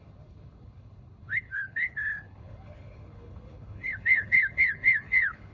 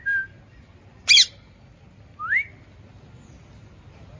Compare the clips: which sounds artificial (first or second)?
first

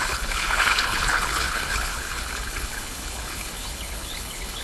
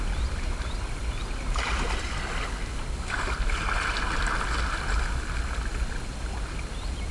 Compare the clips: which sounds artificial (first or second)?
first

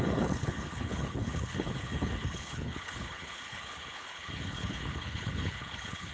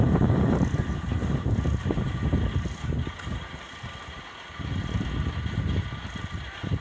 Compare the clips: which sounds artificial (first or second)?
first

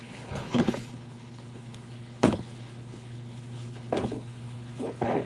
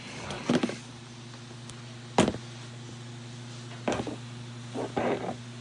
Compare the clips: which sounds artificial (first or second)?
first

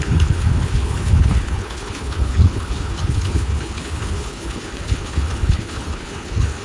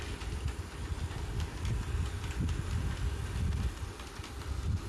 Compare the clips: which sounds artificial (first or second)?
first